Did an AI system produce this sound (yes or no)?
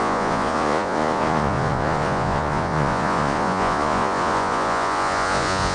yes